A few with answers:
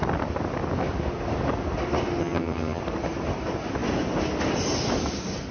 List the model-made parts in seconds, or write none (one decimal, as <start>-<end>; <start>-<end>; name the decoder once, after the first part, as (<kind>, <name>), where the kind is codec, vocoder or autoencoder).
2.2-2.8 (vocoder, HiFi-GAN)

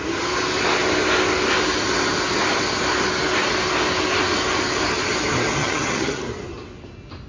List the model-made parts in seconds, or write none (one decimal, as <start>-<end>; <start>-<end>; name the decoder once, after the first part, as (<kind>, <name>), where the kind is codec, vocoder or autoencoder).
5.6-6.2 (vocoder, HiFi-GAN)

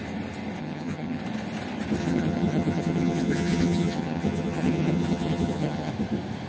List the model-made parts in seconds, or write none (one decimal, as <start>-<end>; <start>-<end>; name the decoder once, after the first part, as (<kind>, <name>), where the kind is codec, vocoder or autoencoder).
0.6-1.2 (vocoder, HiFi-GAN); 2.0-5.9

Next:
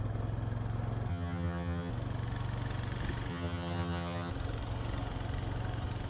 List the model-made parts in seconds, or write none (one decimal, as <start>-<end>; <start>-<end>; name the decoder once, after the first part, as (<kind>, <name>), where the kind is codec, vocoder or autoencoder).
1.1-1.9 (vocoder, HiFi-GAN); 3.3-4.3